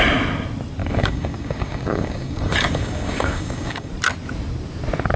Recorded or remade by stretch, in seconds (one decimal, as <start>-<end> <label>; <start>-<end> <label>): 0.0-0.8 recorded; 0.8-3.9 remade; 3.9-5.2 recorded